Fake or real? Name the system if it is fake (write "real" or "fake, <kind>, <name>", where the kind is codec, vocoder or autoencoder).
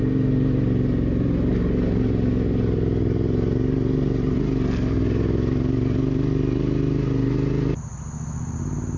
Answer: real